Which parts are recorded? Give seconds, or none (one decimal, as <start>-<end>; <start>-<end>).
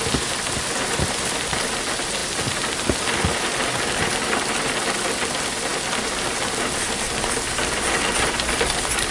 0.0-9.1